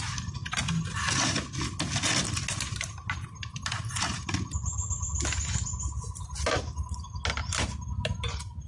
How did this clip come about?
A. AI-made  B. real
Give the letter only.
B